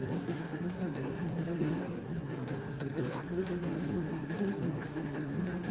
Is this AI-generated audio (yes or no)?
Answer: yes